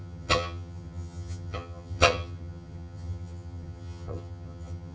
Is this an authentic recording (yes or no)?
no